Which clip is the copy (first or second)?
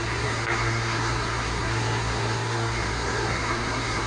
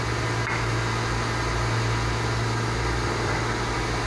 first